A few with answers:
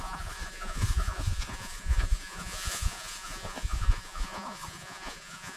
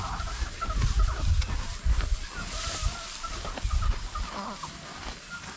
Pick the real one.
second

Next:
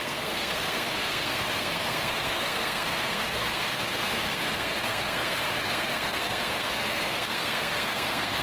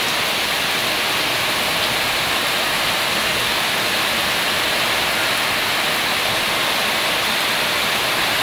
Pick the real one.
second